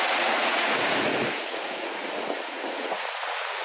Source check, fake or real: fake